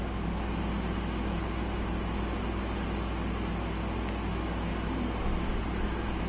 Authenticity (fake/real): real